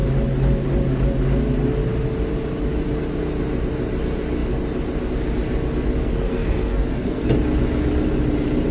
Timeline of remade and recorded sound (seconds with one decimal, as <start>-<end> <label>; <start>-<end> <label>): 0.0-6.0 recorded; 6.0-7.3 remade; 7.3-8.7 recorded